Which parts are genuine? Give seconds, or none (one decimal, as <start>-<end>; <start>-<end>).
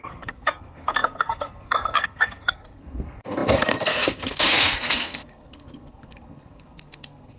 none